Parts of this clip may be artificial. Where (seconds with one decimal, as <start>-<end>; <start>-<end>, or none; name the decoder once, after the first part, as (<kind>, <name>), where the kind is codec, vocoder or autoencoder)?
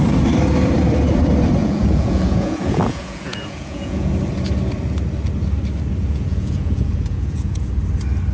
1.6-4.1 (vocoder, Vocos); 6.0-7.7